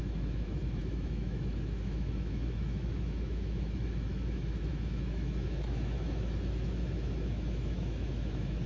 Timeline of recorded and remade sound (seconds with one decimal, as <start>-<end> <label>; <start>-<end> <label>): 0.0-8.7 remade